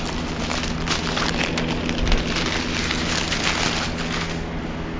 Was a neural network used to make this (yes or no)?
no